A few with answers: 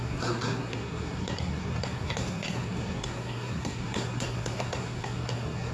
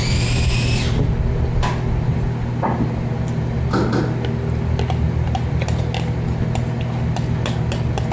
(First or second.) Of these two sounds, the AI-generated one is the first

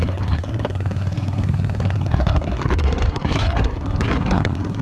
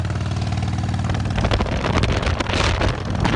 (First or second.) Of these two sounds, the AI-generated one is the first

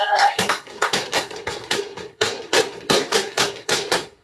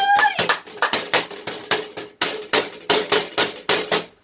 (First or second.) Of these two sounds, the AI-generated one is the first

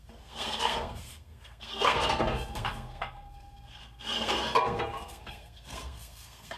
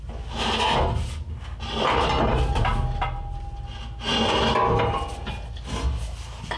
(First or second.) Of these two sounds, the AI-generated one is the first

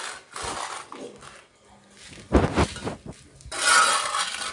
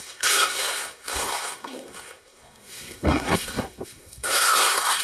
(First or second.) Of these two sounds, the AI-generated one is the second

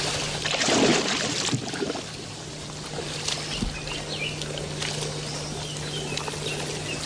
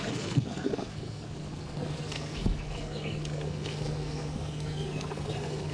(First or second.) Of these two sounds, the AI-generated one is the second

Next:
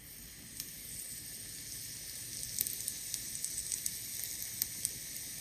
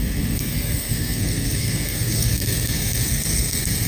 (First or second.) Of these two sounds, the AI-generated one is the second